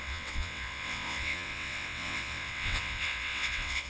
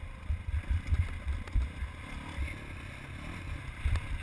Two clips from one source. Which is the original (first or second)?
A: second